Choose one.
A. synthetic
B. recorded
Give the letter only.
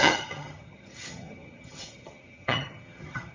A